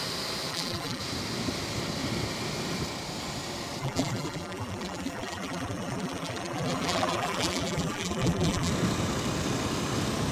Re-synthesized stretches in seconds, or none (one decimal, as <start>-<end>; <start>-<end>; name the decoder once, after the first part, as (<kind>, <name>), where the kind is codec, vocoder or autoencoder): 0.5-1.0 (vocoder, BigVGAN v2); 3.8-8.7

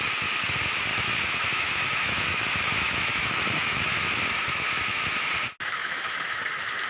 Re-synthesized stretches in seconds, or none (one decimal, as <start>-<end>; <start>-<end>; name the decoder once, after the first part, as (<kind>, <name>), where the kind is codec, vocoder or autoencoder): 0.9-5.0 (autoencoder, DAC-VAE); 5.8-6.4

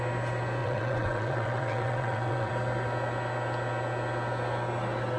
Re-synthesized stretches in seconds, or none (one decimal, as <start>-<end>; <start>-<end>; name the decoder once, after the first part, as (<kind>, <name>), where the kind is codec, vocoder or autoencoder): 0.6-2.5 (vocoder, WaveNeXt)

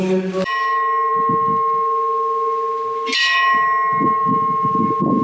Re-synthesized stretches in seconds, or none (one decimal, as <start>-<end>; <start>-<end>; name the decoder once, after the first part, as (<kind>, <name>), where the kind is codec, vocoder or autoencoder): none

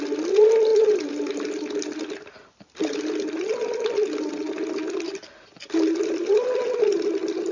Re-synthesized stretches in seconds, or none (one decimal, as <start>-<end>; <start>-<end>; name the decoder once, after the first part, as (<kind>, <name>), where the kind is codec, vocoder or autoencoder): none

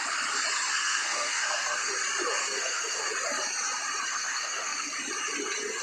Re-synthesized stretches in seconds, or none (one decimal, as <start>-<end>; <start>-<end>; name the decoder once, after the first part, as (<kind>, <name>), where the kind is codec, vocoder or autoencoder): 0.7-1.9 (codec, SNAC); 2.4-3.1; 4.1-4.9

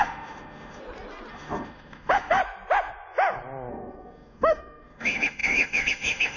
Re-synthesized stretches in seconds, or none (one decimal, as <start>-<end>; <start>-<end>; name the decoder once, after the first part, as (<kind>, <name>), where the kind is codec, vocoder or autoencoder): 0.0-0.8 (autoencoder, DAC-VAE); 1.3-2.4; 3.7-6.4

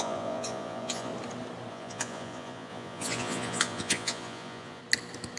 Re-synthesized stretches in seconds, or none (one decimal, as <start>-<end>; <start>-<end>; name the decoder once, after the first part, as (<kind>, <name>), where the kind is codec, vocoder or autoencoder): 0.0-1.1 (vocoder, Vocos); 1.7-4.8